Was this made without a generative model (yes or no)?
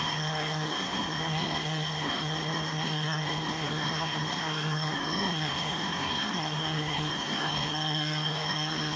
no